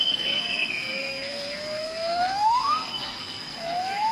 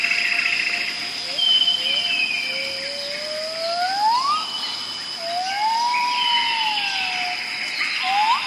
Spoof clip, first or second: first